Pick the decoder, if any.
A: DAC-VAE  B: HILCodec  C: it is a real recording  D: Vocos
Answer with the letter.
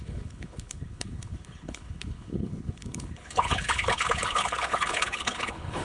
B